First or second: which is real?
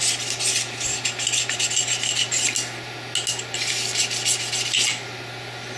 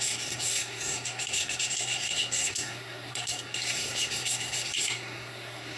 first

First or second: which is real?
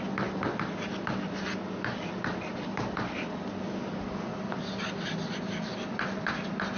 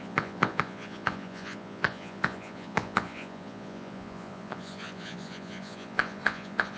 first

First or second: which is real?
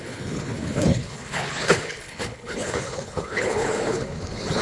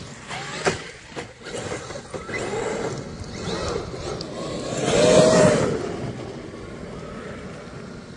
second